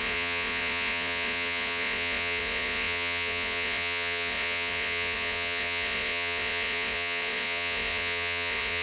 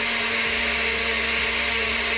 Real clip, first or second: second